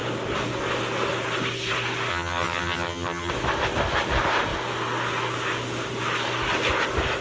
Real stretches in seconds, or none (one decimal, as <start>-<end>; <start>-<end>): 0.0-2.1; 3.3-7.2